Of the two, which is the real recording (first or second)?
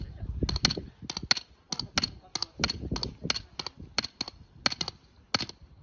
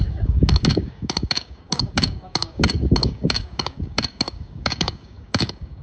first